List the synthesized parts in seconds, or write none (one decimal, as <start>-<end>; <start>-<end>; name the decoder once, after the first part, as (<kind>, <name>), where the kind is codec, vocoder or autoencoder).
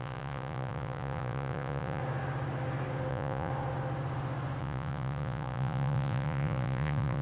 0.0-2.0 (vocoder, Vocos); 3.1-3.5; 4.6-7.2